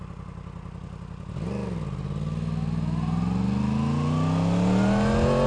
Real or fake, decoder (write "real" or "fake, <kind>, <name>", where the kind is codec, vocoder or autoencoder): real